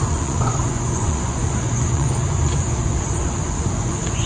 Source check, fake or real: fake